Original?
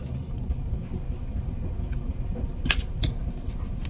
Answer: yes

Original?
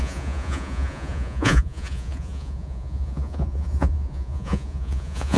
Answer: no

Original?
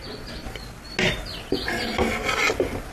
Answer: yes